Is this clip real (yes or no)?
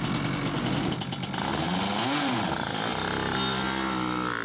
yes